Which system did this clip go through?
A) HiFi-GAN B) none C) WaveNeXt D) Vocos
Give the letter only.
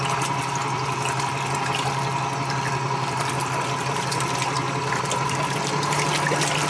B